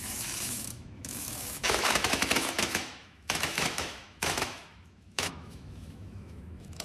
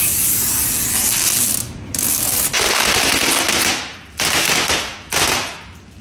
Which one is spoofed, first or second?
first